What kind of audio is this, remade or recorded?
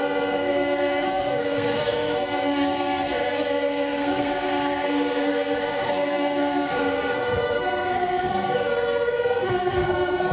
remade